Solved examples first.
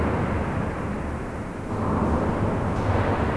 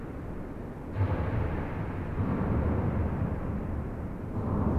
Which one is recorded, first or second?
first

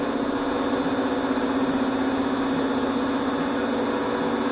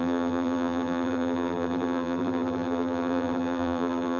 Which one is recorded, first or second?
first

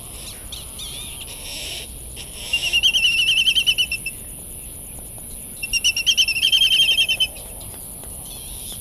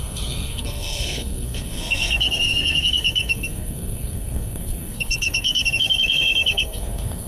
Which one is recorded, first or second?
first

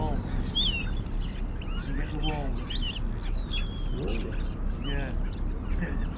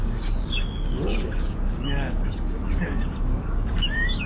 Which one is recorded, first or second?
first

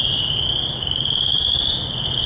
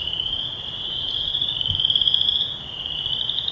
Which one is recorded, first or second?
first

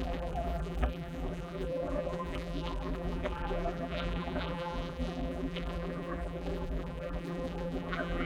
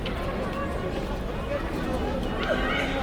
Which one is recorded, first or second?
second